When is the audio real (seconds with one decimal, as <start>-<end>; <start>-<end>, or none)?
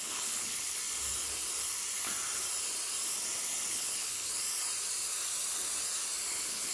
0.8-3.7; 4.3-6.3